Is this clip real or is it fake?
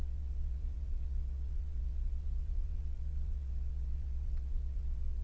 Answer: fake